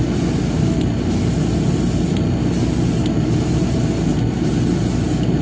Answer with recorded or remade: recorded